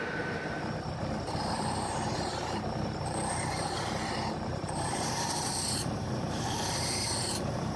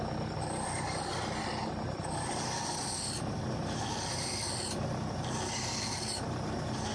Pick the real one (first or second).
second